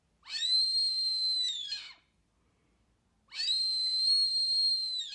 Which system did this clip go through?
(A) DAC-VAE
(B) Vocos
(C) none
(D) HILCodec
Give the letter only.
C